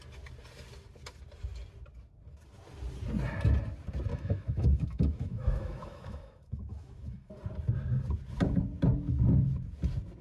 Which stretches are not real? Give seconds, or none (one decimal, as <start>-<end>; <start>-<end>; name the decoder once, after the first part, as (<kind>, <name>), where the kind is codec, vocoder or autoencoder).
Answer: 4.1-7.3 (autoencoder, DAC-VAE)